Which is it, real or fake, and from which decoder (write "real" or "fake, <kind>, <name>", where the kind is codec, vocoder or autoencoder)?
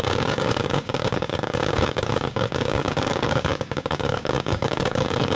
fake, codec, DAC